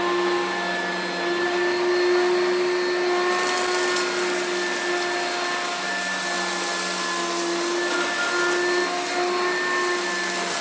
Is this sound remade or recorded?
recorded